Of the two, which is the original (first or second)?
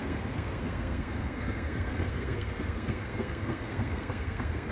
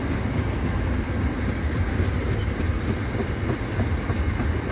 second